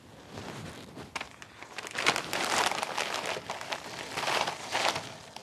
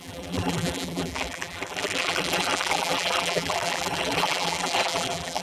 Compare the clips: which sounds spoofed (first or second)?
second